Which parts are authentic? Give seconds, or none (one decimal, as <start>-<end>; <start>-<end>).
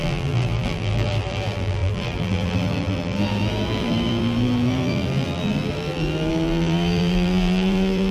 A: none